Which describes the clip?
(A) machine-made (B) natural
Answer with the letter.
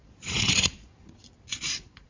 A